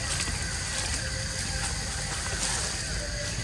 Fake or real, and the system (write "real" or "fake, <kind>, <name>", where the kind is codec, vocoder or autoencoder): real